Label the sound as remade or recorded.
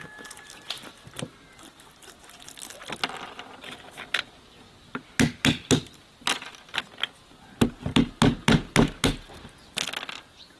recorded